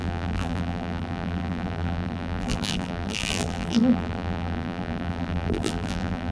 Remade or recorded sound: remade